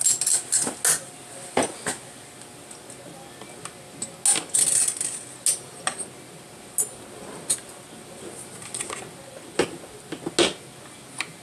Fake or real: real